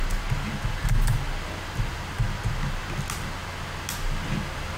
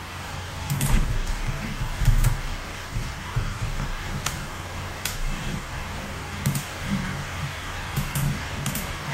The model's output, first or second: second